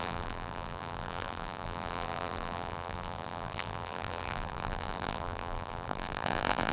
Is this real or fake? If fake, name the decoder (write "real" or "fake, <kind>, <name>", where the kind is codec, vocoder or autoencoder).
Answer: fake, vocoder, BigVGAN v2